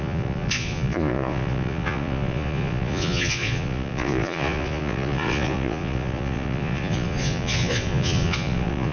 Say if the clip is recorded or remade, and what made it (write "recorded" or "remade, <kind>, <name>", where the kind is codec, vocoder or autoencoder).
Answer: remade, vocoder, Vocos